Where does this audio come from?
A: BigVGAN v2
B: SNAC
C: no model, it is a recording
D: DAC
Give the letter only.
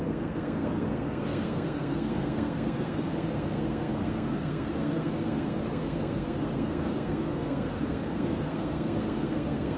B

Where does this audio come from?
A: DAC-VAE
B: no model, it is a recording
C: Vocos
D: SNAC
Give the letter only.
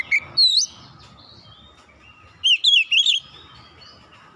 B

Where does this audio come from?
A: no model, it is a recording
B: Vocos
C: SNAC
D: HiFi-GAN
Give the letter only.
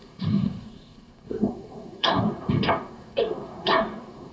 C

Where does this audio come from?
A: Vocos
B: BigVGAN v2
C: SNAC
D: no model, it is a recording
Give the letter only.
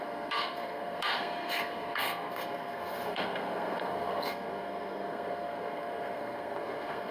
C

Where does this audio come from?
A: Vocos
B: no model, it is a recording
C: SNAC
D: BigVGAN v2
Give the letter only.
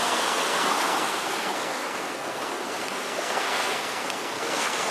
C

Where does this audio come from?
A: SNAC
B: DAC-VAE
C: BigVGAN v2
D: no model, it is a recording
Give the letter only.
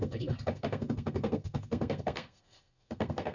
A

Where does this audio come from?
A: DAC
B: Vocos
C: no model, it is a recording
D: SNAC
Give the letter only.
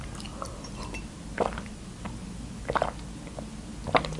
C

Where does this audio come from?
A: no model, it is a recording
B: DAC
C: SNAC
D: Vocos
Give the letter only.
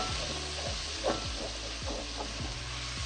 A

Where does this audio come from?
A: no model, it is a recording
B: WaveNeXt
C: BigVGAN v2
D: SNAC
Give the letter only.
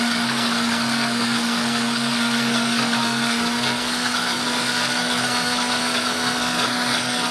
D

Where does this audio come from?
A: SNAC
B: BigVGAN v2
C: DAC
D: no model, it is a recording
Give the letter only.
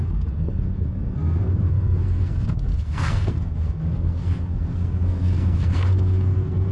A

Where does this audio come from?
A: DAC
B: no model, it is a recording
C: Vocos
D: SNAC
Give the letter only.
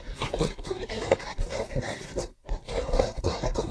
D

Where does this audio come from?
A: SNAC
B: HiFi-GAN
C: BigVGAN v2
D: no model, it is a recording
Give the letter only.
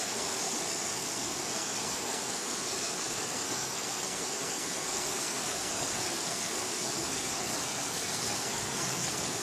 A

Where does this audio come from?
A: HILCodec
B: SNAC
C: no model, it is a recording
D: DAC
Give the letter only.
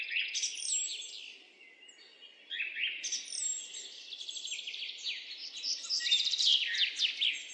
C